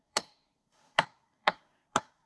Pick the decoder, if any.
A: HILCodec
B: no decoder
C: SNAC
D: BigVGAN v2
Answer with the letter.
C